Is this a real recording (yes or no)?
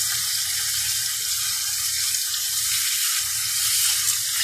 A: yes